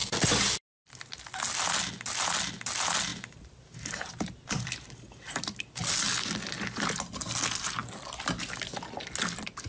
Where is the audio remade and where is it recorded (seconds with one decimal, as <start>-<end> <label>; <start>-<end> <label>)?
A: 0.0-3.1 recorded; 3.1-5.4 remade; 5.4-9.7 recorded